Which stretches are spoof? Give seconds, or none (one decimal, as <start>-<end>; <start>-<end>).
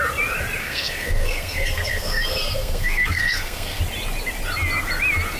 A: 0.6-3.8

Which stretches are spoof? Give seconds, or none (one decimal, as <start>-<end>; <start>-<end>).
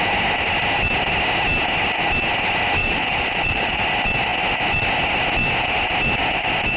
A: 2.8-3.8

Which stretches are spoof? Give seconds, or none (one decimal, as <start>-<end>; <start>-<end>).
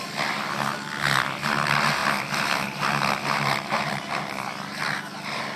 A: none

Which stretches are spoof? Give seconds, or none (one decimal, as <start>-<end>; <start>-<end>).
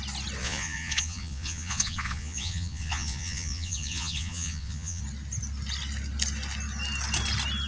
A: 0.4-5.0